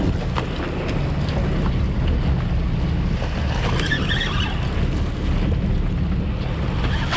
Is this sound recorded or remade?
recorded